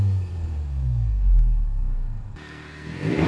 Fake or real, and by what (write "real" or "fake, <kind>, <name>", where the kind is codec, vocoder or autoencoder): fake, codec, SNAC